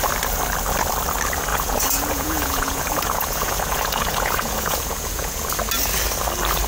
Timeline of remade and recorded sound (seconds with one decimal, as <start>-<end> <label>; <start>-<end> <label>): 0.0-1.5 recorded; 1.5-5.5 remade; 5.5-6.7 recorded